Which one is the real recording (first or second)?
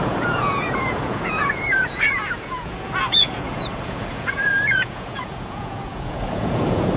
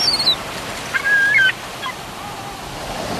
second